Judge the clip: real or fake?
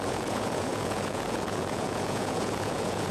fake